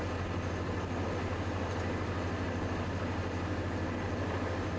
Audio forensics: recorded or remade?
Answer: recorded